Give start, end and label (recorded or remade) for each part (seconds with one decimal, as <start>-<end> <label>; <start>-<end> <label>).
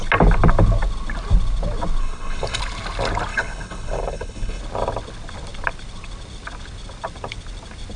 0.0-2.0 recorded; 2.0-2.6 remade; 2.6-3.3 recorded; 3.3-4.6 remade; 4.6-8.0 recorded